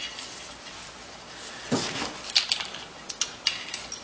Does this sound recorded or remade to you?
recorded